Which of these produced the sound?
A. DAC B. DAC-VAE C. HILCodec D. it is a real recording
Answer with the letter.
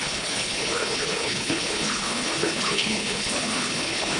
C